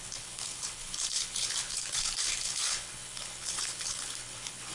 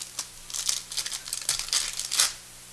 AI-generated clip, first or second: first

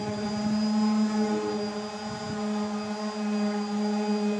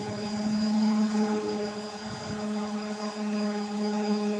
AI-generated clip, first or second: second